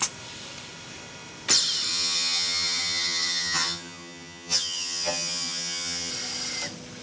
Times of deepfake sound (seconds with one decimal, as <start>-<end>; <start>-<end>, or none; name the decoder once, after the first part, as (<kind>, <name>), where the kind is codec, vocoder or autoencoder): 1.9-6.1 (vocoder, HiFi-GAN)